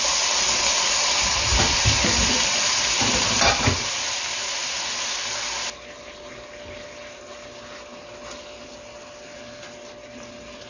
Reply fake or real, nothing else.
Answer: real